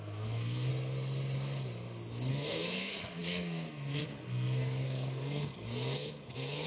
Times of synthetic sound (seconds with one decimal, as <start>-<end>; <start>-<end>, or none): 0.0-0.7; 2.3-6.7